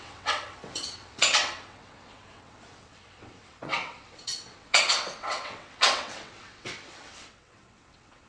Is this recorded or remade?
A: remade